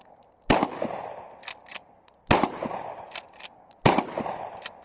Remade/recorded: recorded